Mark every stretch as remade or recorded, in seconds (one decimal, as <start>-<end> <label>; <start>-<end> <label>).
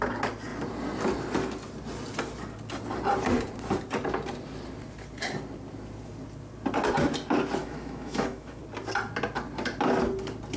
0.0-7.6 recorded; 7.6-8.6 remade; 8.6-10.6 recorded